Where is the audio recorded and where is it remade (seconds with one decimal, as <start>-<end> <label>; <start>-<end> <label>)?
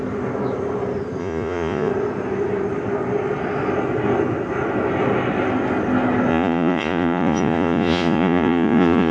0.0-1.2 recorded; 1.2-1.9 remade; 1.9-6.3 recorded; 6.3-9.1 remade